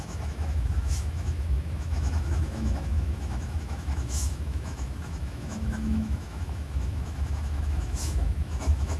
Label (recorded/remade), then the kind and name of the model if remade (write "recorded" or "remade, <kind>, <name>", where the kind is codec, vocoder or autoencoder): remade, autoencoder, DAC-VAE